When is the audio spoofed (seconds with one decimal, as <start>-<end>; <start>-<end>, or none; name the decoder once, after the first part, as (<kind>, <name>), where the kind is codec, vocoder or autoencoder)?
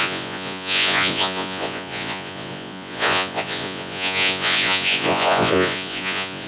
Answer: 0.0-6.5 (vocoder, Vocos)